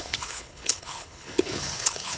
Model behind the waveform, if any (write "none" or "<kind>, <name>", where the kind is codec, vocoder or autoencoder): codec, HILCodec